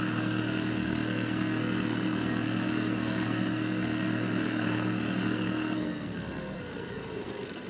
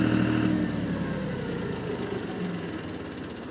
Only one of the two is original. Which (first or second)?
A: second